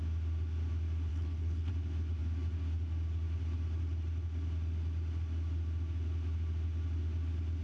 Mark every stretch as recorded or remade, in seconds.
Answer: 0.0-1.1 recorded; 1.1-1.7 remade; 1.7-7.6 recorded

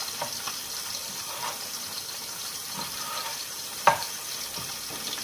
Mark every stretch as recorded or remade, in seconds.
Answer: 0.0-1.0 recorded; 1.0-4.1 remade; 4.1-5.2 recorded